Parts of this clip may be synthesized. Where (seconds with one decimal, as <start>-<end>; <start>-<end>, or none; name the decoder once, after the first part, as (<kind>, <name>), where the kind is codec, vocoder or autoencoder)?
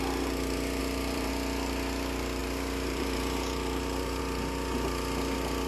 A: 0.8-1.3 (vocoder, BigVGAN v2); 2.4-4.2